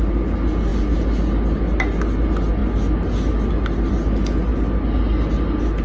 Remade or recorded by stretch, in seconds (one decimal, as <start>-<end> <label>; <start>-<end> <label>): 0.0-5.8 recorded